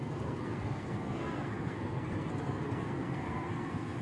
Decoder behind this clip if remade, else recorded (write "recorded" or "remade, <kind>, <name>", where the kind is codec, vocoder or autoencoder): remade, codec, SNAC